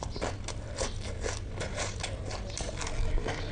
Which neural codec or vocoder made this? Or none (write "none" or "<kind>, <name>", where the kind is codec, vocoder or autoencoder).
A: none